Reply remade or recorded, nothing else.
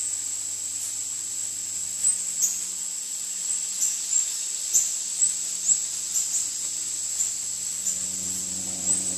recorded